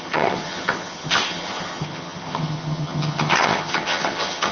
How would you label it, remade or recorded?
remade